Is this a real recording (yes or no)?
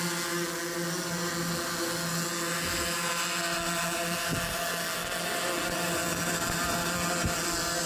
yes